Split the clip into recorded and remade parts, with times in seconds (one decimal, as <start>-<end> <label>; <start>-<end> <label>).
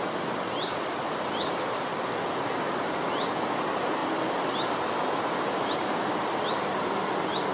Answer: 0.0-7.5 recorded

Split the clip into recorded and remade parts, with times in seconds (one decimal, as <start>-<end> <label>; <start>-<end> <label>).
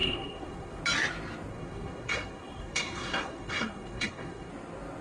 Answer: 0.0-0.8 remade; 0.8-1.5 recorded; 1.5-4.5 remade; 4.5-5.0 recorded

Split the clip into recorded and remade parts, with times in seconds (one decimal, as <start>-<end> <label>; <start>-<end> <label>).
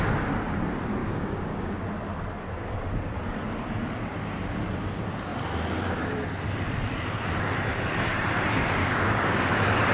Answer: 0.0-1.0 recorded; 1.0-1.8 remade; 1.8-8.8 recorded; 8.8-9.5 remade; 9.5-9.9 recorded